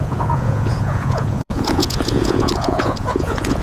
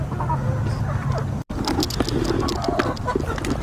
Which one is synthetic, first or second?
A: first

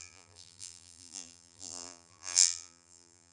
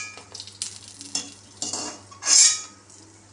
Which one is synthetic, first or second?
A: first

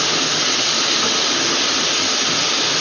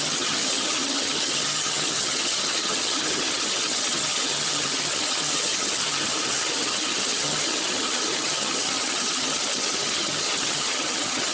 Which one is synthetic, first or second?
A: second